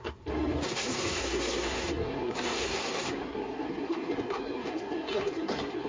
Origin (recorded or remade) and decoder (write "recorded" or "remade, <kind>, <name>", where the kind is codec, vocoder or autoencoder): remade, codec, SNAC